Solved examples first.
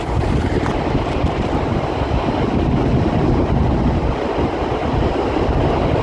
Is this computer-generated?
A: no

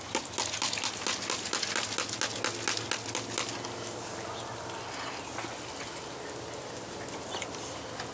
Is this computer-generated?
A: no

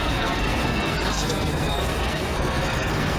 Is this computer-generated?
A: yes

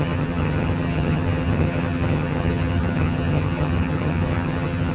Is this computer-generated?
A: yes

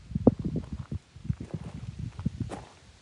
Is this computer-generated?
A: no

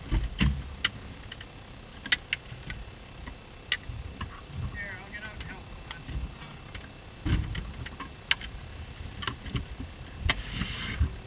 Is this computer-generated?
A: no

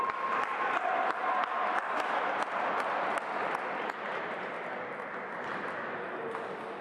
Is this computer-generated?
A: yes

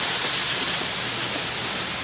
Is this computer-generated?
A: yes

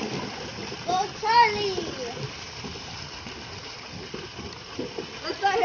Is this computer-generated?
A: no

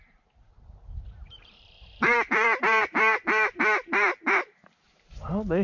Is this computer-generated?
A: yes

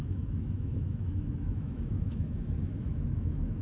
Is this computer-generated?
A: yes